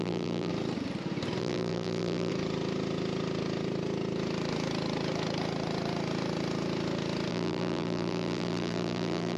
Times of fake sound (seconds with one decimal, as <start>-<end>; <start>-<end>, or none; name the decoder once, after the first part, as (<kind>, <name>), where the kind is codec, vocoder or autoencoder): 0.0-0.5 (vocoder, BigVGAN v2); 1.4-2.3; 7.3-9.4